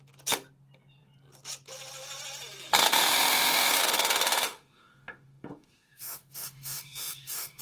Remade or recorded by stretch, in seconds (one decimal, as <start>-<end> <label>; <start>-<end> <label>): 0.0-2.7 recorded; 2.7-7.6 remade

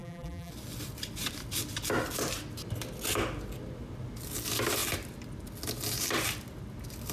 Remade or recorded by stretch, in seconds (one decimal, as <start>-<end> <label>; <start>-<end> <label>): 0.0-0.5 remade; 0.5-7.1 recorded

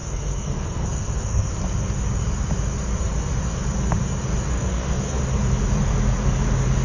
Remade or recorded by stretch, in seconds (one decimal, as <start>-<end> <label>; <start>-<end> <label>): 0.0-1.5 remade; 1.5-4.5 recorded; 4.5-5.2 remade; 5.2-6.8 recorded

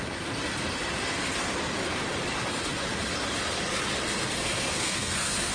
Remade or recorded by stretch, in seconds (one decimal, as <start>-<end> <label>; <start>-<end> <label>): 0.0-4.4 recorded; 4.4-5.5 remade

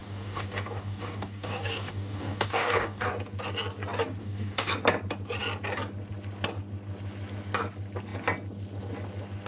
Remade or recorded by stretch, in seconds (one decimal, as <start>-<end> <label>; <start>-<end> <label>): 0.0-3.1 remade; 3.1-4.2 recorded; 4.2-4.7 remade; 4.7-9.5 recorded

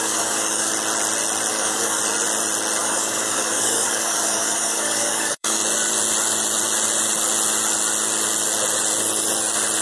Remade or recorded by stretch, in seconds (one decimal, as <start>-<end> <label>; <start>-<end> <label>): 0.0-0.7 remade; 0.7-1.5 recorded; 1.5-2.0 remade; 2.0-2.8 recorded; 2.8-5.6 remade; 5.6-9.8 recorded